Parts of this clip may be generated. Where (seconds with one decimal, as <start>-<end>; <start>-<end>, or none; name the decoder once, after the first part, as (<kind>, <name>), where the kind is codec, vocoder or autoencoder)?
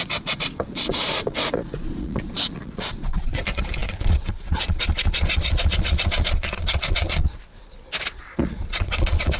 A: 0.0-9.4 (vocoder, Vocos)